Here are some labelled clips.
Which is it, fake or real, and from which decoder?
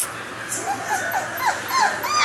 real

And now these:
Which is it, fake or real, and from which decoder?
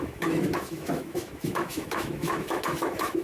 fake, autoencoder, DAC-VAE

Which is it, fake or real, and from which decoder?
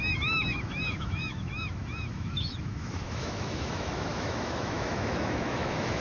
fake, autoencoder, DAC-VAE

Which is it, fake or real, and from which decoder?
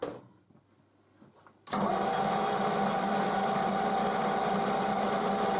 real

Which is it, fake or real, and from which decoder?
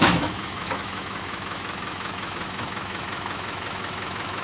fake, autoencoder, DAC-VAE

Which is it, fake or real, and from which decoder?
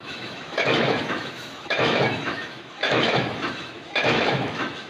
fake, autoencoder, DAC-VAE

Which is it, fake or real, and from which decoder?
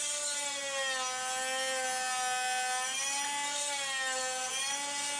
real